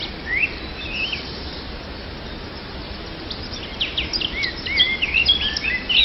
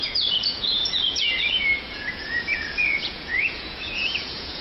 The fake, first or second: second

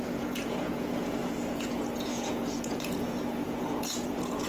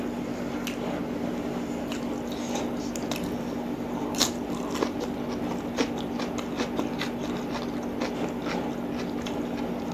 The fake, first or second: first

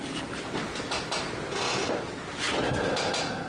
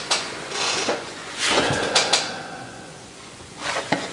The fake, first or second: second